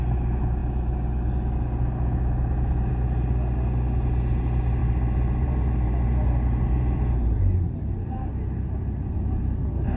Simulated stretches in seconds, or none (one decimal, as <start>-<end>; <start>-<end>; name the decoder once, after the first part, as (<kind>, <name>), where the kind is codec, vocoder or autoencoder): 4.8-7.8 (vocoder, BigVGAN v2)